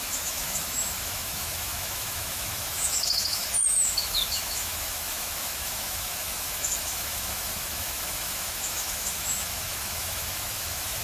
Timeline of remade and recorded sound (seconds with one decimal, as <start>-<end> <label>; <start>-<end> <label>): 0.0-11.0 remade